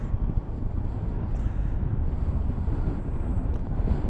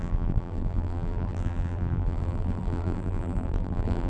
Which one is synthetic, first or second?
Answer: second